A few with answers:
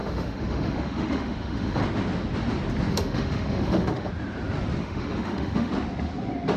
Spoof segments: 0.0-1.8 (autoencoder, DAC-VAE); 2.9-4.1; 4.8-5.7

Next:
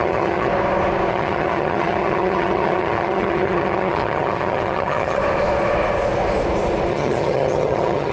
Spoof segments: 0.0-0.5 (vocoder, HiFi-GAN); 1.1-5.2; 6.9-8.1

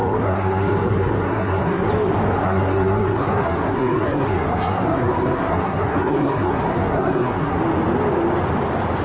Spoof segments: 0.0-1.9 (codec, SNAC); 2.4-7.6

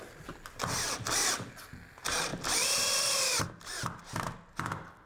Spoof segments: none

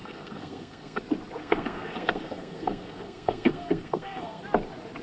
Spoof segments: 0.0-1.0 (codec, SNAC); 1.4-4.4

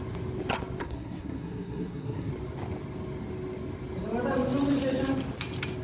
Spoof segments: 0.8-2.3 (codec, SNAC)

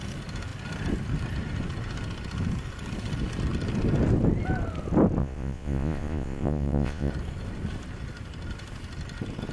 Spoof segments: 5.2-7.1 (vocoder, Vocos)

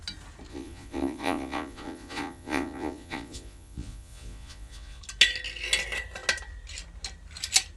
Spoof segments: 0.5-5.0 (vocoder, Vocos)